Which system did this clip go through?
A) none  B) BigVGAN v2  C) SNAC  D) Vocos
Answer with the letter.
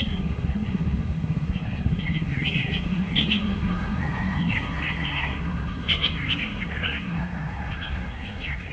C